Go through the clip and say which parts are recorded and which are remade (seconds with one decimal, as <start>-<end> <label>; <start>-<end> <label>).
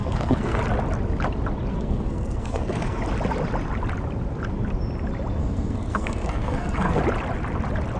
0.0-0.6 remade; 0.6-1.7 recorded; 1.7-3.0 remade; 3.0-5.4 recorded; 5.4-7.0 remade; 7.0-8.0 recorded